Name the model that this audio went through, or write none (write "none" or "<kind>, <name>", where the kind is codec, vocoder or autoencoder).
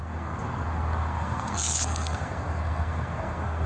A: codec, SNAC